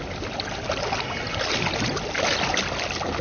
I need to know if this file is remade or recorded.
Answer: recorded